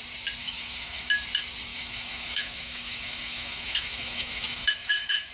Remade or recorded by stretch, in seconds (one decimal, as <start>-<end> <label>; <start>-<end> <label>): 0.0-0.4 recorded; 0.4-1.1 remade; 1.1-1.7 recorded; 1.7-5.3 remade